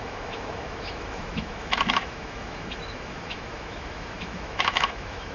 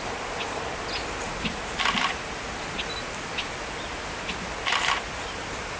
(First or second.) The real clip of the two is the second